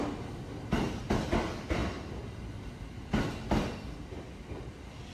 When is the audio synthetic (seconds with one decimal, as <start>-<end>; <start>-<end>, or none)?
none